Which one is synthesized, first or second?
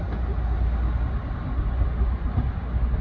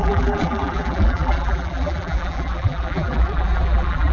second